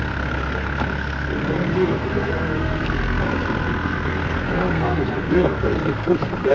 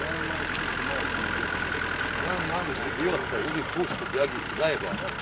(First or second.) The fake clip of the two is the first